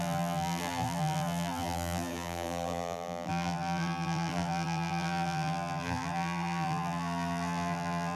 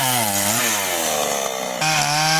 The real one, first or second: second